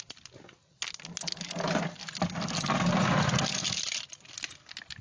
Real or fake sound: real